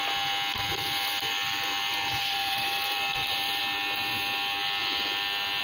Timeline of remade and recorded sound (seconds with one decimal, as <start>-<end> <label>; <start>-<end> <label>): 0.0-0.7 recorded; 0.7-3.6 remade; 3.6-5.6 recorded